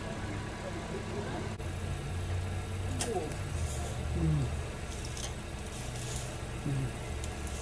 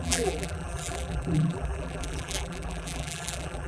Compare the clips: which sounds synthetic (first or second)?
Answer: second